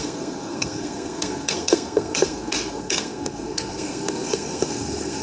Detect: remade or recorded remade